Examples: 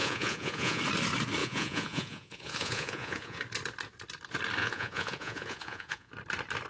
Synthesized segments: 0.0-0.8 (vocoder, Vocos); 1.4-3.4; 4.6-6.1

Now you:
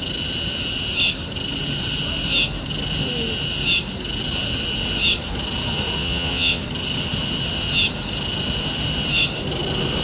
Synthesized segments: 6.0-6.6 (vocoder, Vocos)

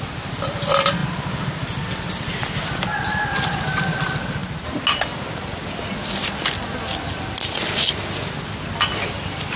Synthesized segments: none

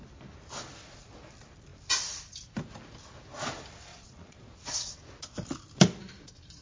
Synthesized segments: 3.9-4.5 (vocoder, Vocos)

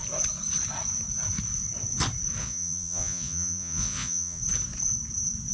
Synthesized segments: 2.4-4.4 (vocoder, Vocos)

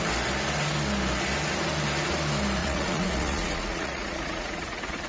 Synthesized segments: 2.6-5.1 (vocoder, Vocos)

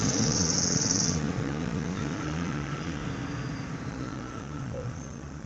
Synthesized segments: 0.0-3.0 (vocoder, Vocos); 3.9-5.5